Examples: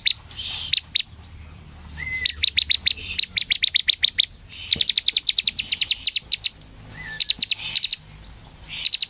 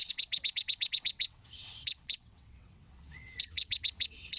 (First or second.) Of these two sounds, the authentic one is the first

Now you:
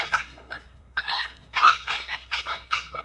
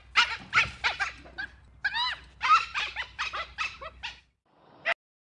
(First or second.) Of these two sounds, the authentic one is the second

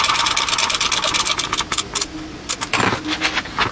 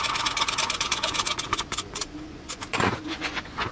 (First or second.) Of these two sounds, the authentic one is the first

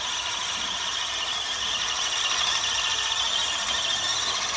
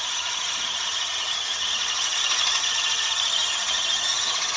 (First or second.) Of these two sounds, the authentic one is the first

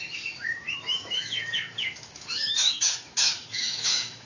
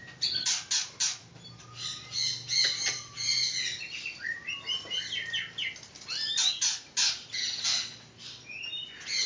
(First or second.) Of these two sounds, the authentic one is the second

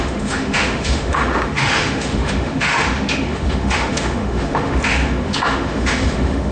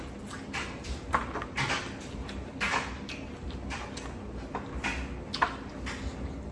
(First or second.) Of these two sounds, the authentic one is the second